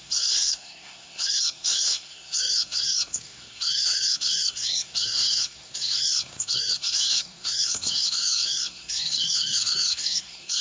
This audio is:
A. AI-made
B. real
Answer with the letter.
A